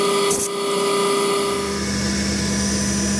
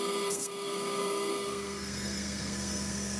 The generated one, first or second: second